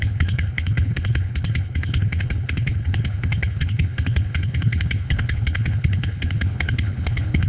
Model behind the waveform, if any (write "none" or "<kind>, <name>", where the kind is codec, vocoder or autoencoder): codec, HILCodec